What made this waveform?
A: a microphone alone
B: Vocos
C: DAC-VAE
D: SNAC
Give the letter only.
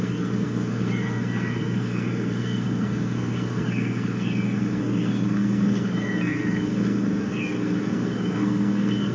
D